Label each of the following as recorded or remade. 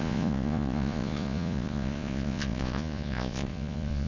remade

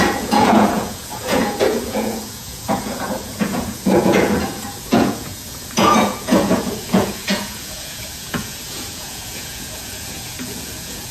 remade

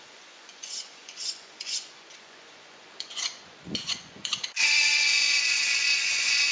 remade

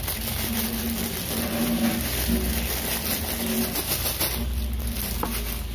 recorded